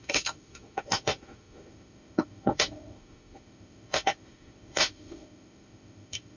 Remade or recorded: remade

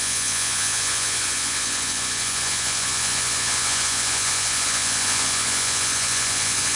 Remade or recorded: remade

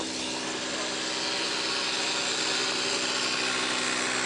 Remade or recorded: recorded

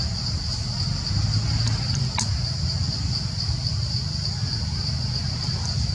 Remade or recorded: recorded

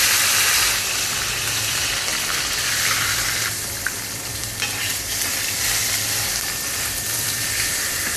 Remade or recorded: remade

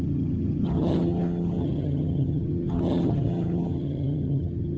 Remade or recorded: remade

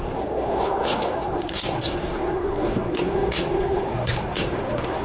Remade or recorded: remade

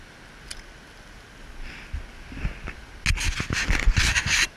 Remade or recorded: recorded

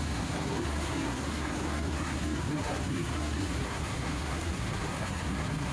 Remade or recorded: remade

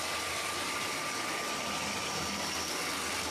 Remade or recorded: recorded